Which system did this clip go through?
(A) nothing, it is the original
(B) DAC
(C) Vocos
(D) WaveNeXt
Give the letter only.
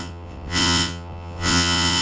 D